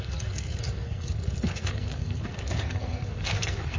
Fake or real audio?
fake